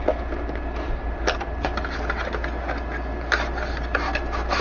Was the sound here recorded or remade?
recorded